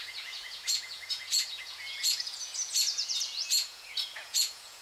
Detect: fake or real fake